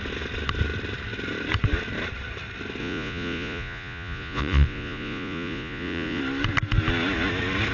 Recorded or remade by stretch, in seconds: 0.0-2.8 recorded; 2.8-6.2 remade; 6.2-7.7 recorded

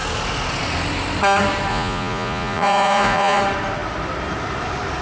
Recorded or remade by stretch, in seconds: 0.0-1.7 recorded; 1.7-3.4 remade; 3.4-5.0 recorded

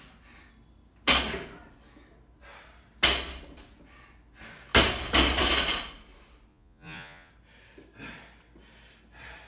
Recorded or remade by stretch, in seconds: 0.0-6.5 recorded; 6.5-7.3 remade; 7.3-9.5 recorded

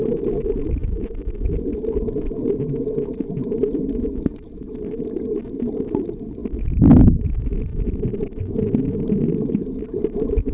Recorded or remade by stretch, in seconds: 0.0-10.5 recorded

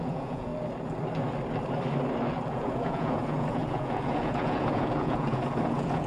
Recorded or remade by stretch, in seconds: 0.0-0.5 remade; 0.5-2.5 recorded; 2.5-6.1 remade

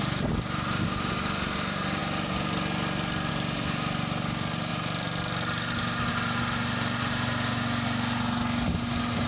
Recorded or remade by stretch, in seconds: 0.0-9.3 recorded